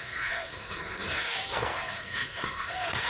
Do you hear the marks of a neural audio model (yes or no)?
yes